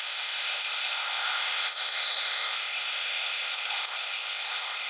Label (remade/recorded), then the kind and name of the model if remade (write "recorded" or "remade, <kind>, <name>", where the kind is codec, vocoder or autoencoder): remade, codec, ZipCodec